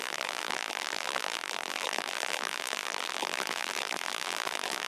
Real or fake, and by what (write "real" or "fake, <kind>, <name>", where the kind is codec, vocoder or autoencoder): fake, vocoder, BigVGAN v2